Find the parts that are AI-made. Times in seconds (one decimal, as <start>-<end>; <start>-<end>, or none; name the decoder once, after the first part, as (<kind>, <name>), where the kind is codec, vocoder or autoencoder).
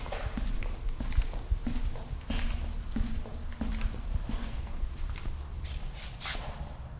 4.4-4.9 (codec, SNAC)